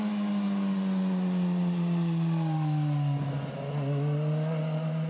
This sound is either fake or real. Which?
real